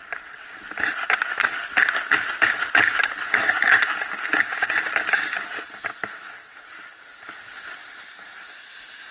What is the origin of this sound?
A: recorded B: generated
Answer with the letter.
A